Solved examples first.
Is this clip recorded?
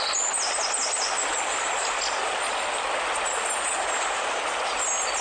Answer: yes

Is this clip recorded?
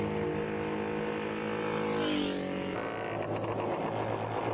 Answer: yes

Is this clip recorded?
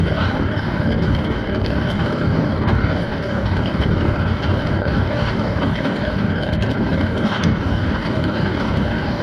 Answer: no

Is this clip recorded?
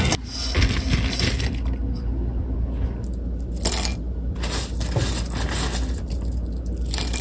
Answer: yes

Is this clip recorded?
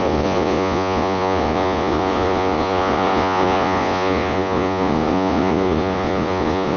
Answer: no